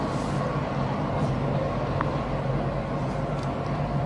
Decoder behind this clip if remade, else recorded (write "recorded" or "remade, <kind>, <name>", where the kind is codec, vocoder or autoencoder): recorded